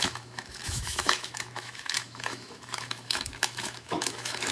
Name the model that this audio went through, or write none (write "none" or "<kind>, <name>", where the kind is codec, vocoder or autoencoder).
autoencoder, DAC-VAE